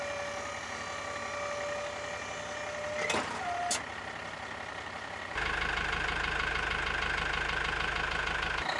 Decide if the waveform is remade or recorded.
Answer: recorded